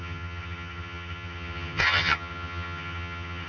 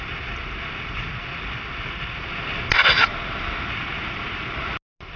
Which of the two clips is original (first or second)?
second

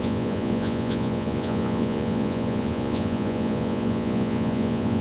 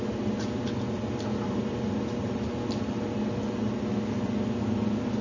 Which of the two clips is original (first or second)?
second